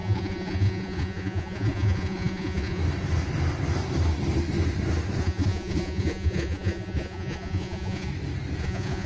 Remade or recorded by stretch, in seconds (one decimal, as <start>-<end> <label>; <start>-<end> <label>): 0.0-2.8 remade; 2.8-5.2 recorded; 5.2-8.1 remade; 8.1-8.6 recorded; 8.6-9.1 remade